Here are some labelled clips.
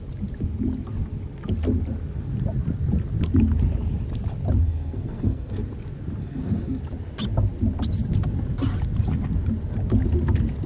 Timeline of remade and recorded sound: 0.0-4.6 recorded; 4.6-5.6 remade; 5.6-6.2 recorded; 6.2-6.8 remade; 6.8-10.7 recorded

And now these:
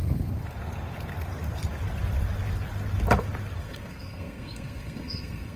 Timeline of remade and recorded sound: 0.0-3.6 recorded; 3.6-5.6 remade

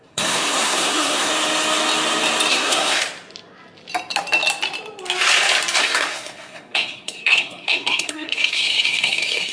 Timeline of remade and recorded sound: 0.0-1.3 remade; 1.3-2.5 recorded; 2.5-3.0 remade; 3.0-5.8 recorded; 5.8-9.5 remade

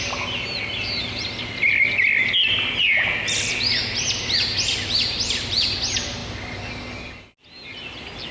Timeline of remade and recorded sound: 0.0-8.3 recorded

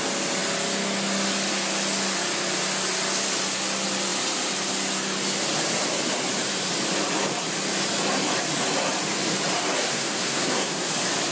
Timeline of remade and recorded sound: 0.0-9.9 recorded; 9.9-10.9 remade; 10.9-11.3 recorded

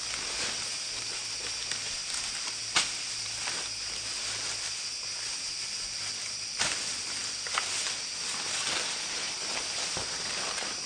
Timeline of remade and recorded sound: 0.0-10.9 recorded

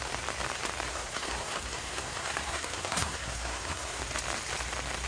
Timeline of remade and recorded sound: 0.0-0.9 recorded; 0.9-4.0 remade; 4.0-5.1 recorded

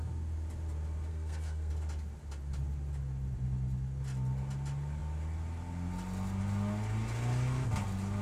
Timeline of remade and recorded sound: 0.0-1.1 recorded; 1.1-1.7 remade; 1.7-8.2 recorded